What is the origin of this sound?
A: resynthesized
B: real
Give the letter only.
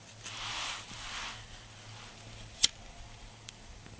A